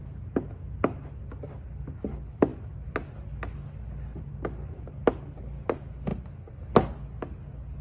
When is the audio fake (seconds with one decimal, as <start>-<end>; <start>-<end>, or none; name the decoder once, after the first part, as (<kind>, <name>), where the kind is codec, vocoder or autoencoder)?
none